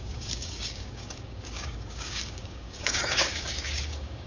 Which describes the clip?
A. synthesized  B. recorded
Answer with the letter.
A